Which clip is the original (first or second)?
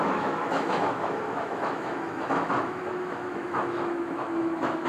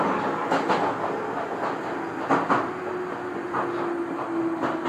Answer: second